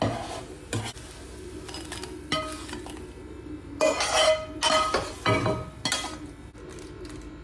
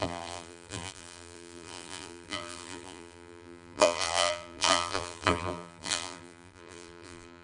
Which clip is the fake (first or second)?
second